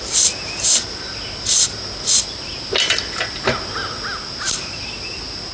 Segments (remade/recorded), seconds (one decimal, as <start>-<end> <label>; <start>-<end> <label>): 0.0-5.5 recorded